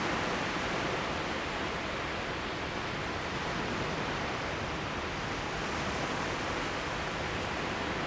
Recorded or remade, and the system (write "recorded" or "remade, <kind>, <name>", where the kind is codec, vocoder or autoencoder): recorded